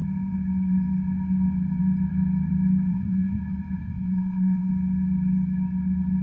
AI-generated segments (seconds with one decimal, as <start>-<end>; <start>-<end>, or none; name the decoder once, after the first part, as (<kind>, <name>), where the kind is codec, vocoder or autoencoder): 2.9-3.4 (codec, SNAC); 3.8-4.7